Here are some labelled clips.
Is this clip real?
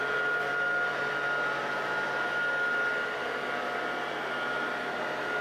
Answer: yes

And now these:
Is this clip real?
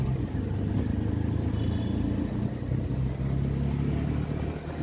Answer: yes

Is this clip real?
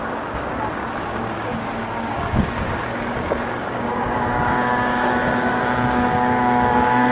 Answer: no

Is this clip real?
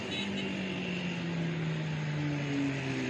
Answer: yes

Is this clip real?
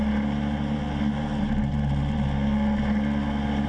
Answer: yes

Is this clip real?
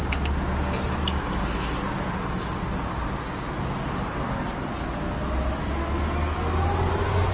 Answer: yes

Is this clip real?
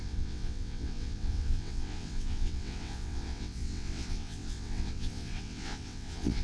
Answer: no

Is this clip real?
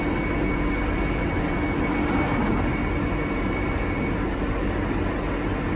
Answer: yes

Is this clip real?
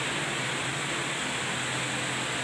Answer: yes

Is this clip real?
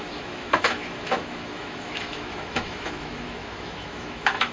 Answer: no